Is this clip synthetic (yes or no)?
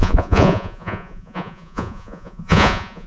yes